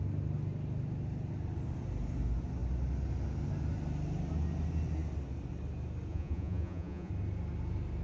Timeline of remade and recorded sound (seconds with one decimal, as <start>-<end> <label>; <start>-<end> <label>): 0.0-6.1 recorded; 6.1-7.1 remade; 7.1-8.0 recorded